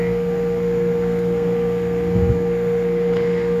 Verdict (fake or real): fake